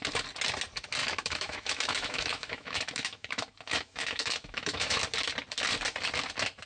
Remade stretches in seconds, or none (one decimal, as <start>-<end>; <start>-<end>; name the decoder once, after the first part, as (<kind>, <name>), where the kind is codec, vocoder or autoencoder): 1.0-5.0 (autoencoder, DAC-VAE)